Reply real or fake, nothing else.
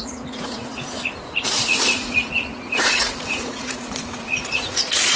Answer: fake